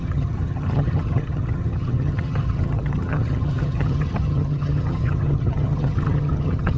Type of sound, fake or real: fake